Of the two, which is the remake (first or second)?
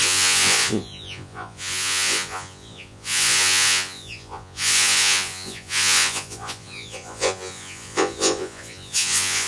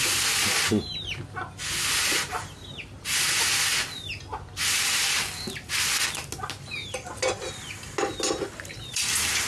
first